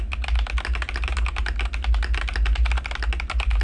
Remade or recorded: recorded